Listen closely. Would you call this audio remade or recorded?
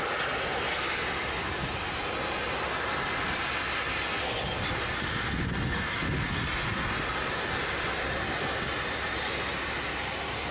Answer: recorded